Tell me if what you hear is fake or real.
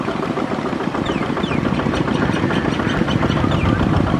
real